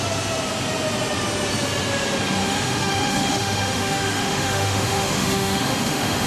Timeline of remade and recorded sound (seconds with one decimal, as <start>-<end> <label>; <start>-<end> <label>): 0.0-2.4 recorded; 2.4-6.3 remade